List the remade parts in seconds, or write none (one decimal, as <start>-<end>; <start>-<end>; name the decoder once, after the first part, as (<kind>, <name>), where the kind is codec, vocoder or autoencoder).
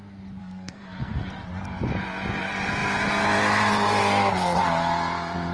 0.4-1.3 (codec, SNAC)